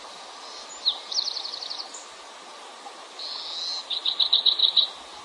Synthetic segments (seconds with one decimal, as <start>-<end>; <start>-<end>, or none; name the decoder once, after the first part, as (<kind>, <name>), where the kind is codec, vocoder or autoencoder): 4.6-5.2 (vocoder, BigVGAN v2)